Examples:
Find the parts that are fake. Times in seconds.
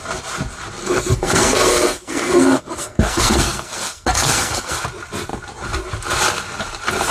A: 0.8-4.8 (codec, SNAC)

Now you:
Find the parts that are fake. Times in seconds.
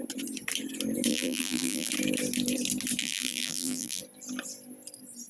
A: 1.1-1.9 (vocoder, BigVGAN v2); 3.0-4.0